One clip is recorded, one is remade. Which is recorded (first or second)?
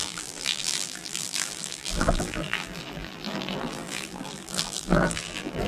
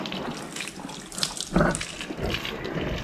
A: second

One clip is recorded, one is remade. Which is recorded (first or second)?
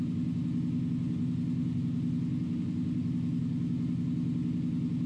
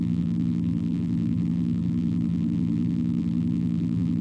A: first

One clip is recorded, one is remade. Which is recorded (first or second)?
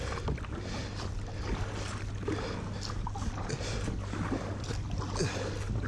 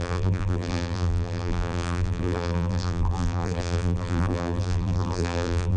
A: first